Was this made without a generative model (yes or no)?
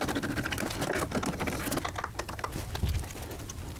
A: yes